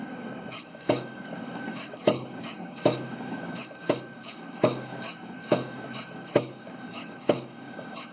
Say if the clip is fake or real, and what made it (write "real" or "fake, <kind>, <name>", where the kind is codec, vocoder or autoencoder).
fake, codec, DAC